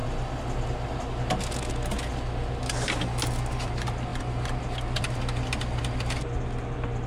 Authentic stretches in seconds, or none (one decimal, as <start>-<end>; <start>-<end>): 0.0-7.1